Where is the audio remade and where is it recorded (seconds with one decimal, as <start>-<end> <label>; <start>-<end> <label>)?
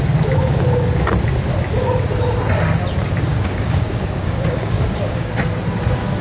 0.0-3.3 recorded; 3.3-5.3 remade; 5.3-6.2 recorded